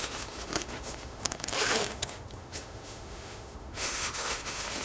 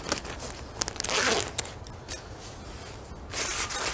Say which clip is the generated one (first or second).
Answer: first